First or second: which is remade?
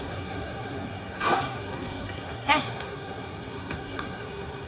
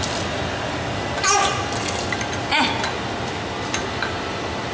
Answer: first